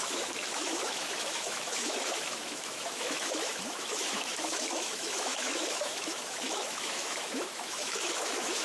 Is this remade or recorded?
remade